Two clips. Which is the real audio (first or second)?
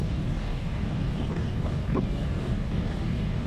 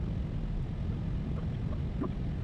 second